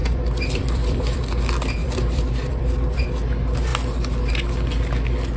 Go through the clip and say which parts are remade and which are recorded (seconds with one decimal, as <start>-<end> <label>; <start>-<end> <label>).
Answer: 0.0-1.2 remade; 1.2-1.8 recorded; 1.8-3.0 remade; 3.0-5.4 recorded